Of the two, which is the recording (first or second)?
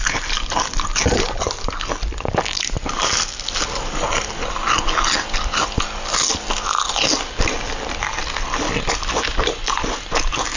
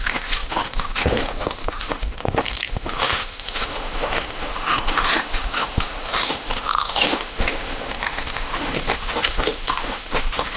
first